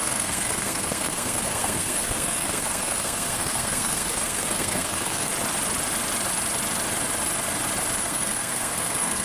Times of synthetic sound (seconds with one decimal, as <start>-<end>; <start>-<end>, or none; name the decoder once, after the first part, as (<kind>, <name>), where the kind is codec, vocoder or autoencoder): 0.0-5.3 (codec, SNAC); 8.0-9.2